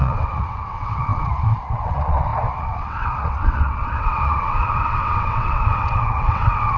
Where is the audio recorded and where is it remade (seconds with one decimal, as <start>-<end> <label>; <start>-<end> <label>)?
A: 0.0-6.8 remade